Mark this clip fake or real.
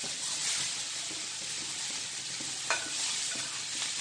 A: real